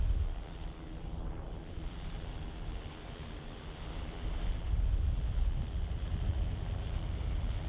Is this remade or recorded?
recorded